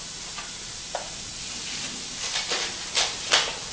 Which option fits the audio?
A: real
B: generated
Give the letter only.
A